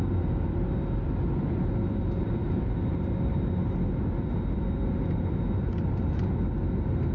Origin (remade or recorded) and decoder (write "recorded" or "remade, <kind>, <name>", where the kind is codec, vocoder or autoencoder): recorded